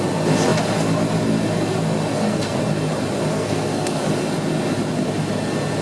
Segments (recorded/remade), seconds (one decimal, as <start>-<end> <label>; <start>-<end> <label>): 0.0-2.1 recorded; 2.1-2.6 remade; 2.6-3.3 recorded; 3.3-4.1 remade; 4.1-5.8 recorded

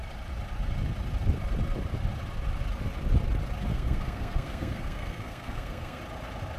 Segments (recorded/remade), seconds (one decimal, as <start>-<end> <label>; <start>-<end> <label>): 0.0-3.7 recorded; 3.7-6.0 remade; 6.0-6.6 recorded